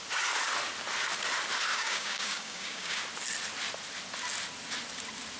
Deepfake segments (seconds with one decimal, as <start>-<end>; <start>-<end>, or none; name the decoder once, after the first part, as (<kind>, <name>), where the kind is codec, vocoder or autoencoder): 1.7-3.0 (codec, DAC)